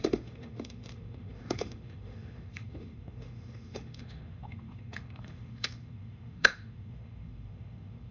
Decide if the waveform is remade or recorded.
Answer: remade